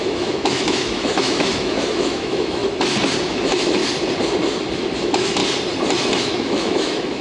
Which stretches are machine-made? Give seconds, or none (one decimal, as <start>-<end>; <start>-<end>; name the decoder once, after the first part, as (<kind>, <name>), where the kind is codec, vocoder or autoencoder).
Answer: 0.0-2.6 (autoencoder, DAC-VAE); 3.2-3.8; 5.0-5.4; 6.2-7.2